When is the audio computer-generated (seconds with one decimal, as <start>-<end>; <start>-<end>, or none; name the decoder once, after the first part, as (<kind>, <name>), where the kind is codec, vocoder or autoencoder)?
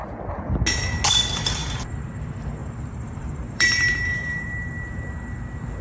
1.6-2.2 (vocoder, BigVGAN v2); 2.6-5.8